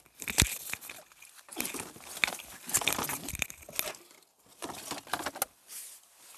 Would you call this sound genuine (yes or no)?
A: yes